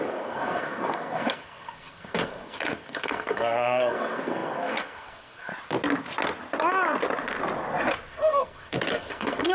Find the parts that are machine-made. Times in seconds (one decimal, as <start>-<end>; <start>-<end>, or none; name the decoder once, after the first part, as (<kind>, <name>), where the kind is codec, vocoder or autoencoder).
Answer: 0.0-5.5 (codec, SNAC); 8.1-9.5